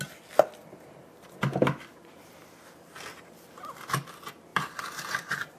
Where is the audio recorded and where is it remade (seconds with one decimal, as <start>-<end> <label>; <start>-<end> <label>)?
0.0-4.5 recorded; 4.5-5.6 remade